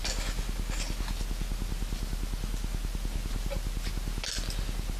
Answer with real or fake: real